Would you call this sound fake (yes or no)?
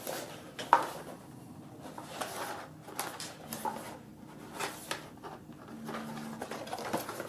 no